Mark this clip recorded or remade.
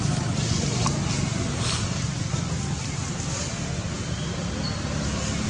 recorded